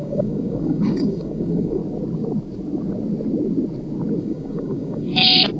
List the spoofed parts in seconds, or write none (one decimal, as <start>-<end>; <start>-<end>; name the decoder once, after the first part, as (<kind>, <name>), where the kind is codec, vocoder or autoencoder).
0.0-1.8 (codec, DAC); 4.2-5.1